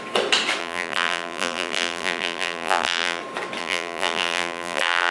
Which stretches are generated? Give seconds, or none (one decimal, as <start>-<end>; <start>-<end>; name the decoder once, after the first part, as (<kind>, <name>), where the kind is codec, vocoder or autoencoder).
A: 0.6-3.2 (vocoder, BigVGAN v2); 3.6-5.1